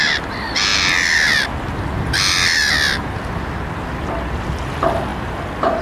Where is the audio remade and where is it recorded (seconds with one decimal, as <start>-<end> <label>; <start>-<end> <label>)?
0.0-5.8 recorded

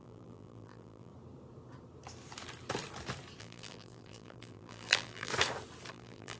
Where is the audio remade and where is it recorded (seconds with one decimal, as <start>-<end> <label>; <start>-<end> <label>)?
0.0-1.1 remade; 1.1-3.4 recorded; 3.4-5.3 remade; 5.3-5.9 recorded; 5.9-6.4 remade

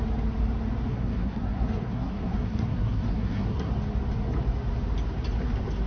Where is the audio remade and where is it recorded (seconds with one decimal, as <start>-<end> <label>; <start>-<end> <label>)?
0.0-0.9 recorded; 0.9-3.7 remade; 3.7-5.9 recorded

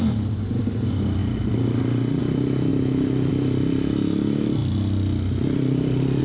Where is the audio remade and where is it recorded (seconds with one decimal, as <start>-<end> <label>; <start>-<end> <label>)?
0.0-6.2 recorded

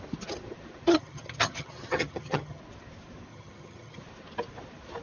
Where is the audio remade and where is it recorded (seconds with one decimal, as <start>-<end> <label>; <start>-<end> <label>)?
0.0-0.9 recorded; 0.9-2.6 remade; 2.6-3.3 recorded; 3.3-4.0 remade; 4.0-5.0 recorded

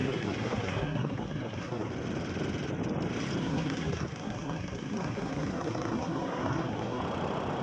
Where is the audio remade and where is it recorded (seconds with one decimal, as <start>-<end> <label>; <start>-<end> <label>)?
0.0-1.9 remade; 1.9-3.4 recorded; 3.4-7.0 remade; 7.0-7.6 recorded

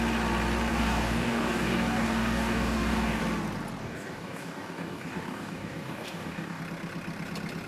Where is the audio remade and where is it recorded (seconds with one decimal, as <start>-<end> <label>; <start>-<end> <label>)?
0.0-0.7 recorded; 0.7-3.2 remade; 3.2-3.8 recorded; 3.8-6.6 remade; 6.6-7.7 recorded

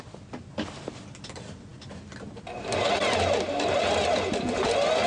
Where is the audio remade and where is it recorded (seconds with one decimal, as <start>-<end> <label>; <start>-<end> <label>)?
0.0-5.1 recorded